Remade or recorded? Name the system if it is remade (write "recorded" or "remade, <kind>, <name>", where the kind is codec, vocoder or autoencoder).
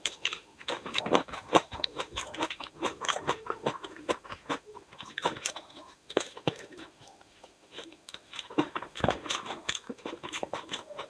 remade, autoencoder, DAC-VAE